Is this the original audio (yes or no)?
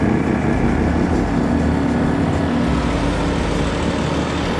yes